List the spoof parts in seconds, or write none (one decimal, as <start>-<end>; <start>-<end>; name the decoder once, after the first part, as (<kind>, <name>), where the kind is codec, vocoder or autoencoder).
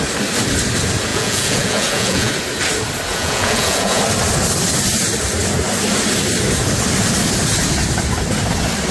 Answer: 1.1-2.3 (vocoder, Vocos); 3.1-4.0